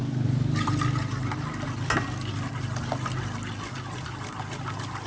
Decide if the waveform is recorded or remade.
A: recorded